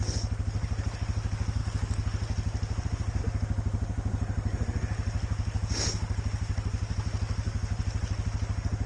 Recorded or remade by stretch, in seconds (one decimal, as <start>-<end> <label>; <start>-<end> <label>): 0.0-8.9 recorded